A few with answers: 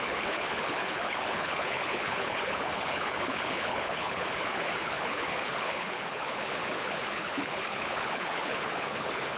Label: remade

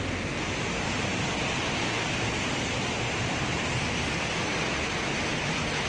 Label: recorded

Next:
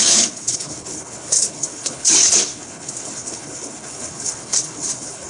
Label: remade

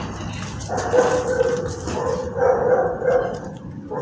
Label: recorded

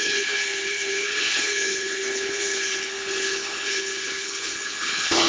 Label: remade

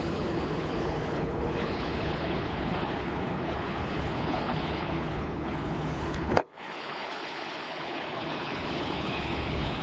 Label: remade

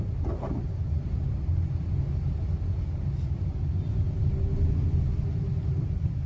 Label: recorded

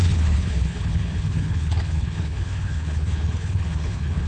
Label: remade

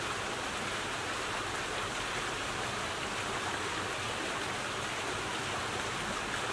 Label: recorded